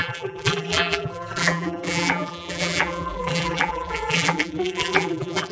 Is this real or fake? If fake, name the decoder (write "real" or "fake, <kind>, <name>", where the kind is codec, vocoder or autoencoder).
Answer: fake, vocoder, BigVGAN v2